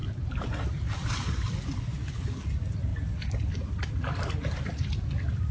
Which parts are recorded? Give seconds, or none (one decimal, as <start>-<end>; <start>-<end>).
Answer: 1.8-2.9; 3.7-4.4; 5.0-5.5